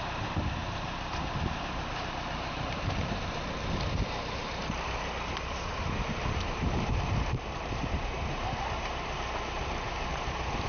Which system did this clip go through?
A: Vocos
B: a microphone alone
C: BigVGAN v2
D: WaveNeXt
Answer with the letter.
C